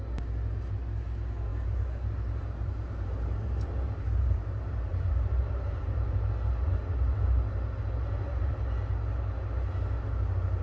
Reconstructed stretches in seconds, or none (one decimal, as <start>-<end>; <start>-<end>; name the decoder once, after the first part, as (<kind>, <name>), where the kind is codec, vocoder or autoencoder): 1.5-6.7 (vocoder, BigVGAN v2); 7.8-8.5